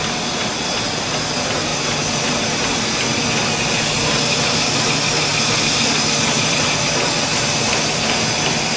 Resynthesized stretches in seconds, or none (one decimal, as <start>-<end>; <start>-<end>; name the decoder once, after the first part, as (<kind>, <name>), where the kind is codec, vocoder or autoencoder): none